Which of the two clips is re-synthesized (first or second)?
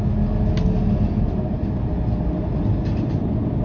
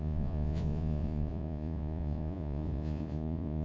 second